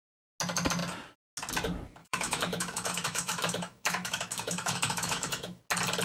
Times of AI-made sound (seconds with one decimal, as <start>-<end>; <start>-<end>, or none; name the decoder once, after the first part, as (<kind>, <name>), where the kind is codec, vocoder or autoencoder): 2.0-5.6 (autoencoder, DAC-VAE)